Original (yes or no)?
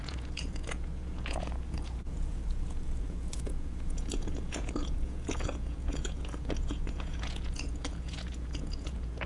no